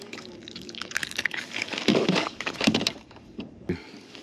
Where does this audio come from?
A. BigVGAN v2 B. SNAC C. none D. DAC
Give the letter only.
D